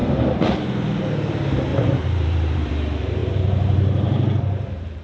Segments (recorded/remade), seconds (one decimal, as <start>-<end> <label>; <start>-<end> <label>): 0.0-1.7 recorded; 1.7-2.7 remade; 2.7-3.2 recorded; 3.2-5.0 remade